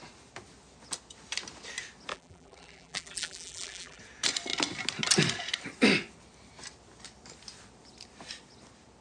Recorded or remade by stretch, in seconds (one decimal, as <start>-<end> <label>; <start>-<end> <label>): 0.0-2.1 recorded; 2.1-4.0 remade; 4.0-9.0 recorded